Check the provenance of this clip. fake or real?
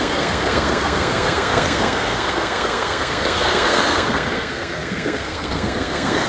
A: fake